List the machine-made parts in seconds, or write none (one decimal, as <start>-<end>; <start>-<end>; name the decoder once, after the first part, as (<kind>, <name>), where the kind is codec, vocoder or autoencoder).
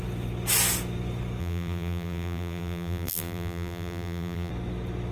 1.4-4.5 (vocoder, BigVGAN v2)